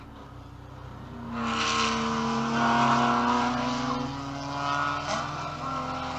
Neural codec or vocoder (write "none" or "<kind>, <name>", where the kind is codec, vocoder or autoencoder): none